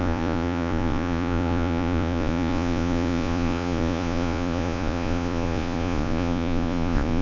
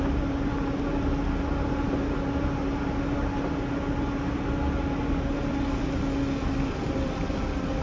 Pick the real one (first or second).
second